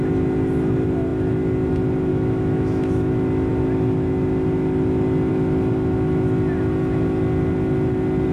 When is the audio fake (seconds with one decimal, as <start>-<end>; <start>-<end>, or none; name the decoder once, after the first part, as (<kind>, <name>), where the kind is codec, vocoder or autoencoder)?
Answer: 2.1-3.1 (autoencoder, DAC-VAE)